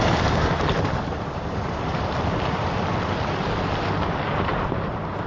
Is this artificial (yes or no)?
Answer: yes